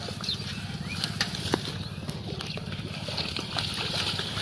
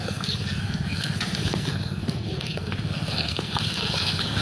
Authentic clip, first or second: first